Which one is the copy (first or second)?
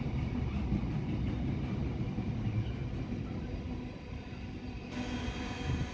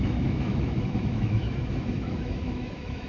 second